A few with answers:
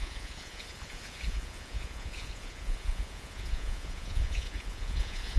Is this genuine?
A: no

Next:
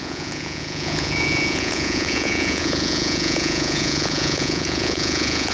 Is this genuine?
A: no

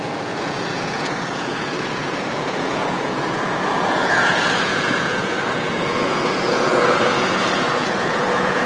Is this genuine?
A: no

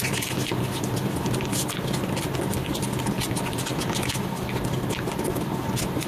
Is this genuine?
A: yes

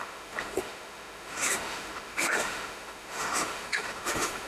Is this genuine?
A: no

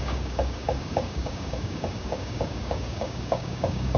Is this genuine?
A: no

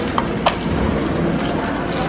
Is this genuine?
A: yes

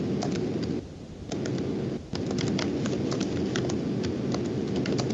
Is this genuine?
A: yes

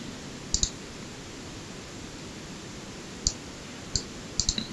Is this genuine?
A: yes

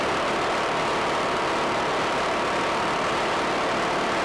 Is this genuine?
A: yes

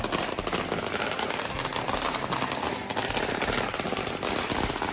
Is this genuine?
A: yes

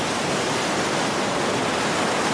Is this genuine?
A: yes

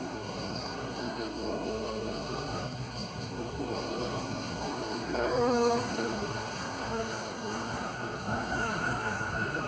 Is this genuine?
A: no